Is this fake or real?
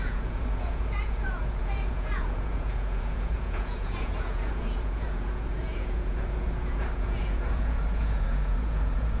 fake